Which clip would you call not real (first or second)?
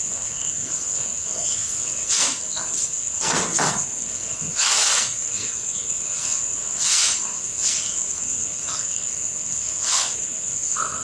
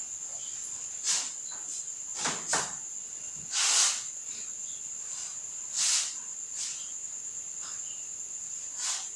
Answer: first